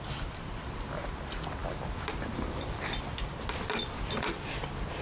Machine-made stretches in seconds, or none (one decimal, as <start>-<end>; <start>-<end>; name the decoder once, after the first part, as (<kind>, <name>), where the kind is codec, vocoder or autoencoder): none